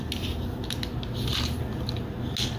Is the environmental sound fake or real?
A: real